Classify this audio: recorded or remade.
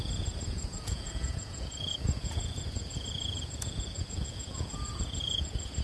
remade